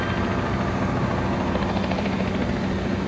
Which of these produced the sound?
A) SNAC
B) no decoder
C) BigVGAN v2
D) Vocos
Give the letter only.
B